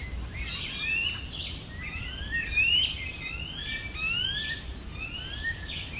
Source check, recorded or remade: recorded